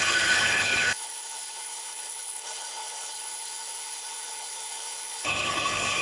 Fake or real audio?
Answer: fake